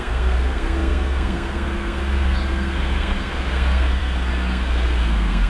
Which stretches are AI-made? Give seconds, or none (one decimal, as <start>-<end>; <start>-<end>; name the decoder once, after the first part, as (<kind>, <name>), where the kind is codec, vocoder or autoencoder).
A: 0.0-5.5 (codec, SNAC)